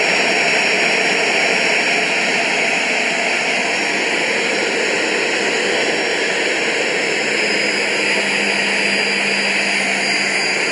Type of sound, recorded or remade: recorded